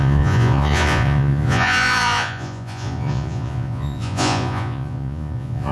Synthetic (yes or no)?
yes